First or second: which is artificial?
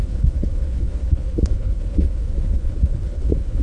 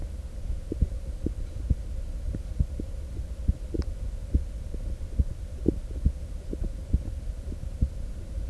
first